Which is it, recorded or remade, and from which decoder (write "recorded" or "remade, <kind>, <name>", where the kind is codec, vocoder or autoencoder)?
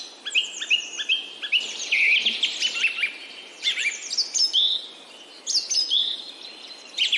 recorded